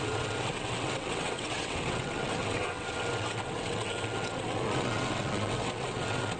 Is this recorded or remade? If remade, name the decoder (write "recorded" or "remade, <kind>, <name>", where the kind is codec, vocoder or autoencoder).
remade, vocoder, WaveNeXt